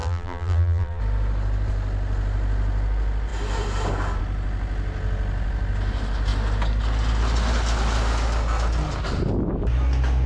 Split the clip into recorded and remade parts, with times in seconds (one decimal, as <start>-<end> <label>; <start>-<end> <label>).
0.0-1.0 remade; 1.0-10.3 recorded